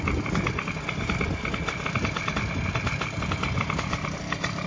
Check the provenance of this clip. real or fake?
real